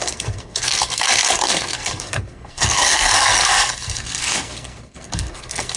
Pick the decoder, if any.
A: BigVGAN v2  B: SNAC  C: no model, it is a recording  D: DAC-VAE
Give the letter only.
B